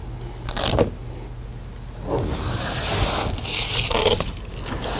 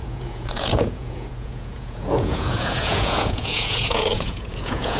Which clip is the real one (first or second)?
first